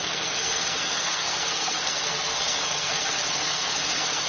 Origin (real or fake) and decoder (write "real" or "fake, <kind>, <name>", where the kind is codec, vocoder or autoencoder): fake, codec, SNAC